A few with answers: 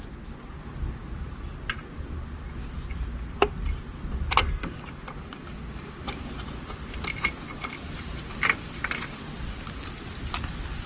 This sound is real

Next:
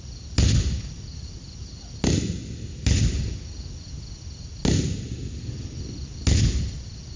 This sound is real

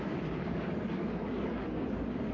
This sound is fake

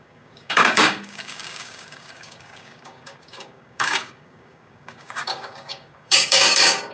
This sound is fake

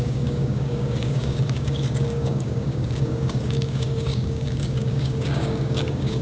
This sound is fake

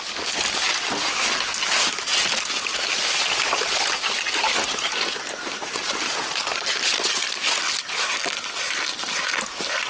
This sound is real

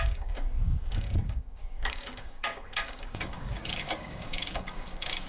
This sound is fake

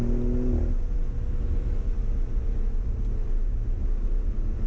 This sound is real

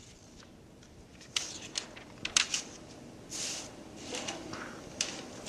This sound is real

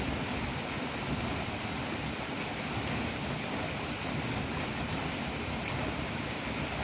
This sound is real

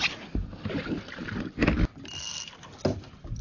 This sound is real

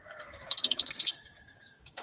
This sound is fake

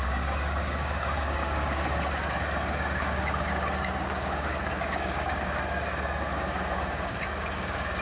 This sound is fake